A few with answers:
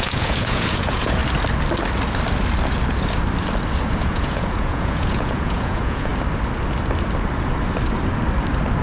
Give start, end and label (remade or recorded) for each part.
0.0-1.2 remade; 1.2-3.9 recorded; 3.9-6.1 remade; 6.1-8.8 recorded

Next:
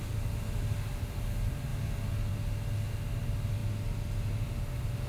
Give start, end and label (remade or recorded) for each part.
0.0-5.1 recorded